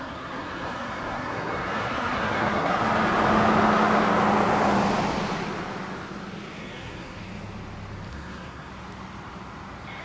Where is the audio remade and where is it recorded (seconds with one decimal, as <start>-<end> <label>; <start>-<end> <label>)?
0.0-2.8 remade; 2.8-6.6 recorded; 6.6-7.2 remade; 7.2-8.1 recorded; 8.1-8.7 remade; 8.7-10.0 recorded